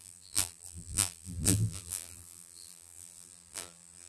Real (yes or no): no